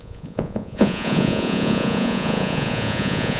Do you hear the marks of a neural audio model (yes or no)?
yes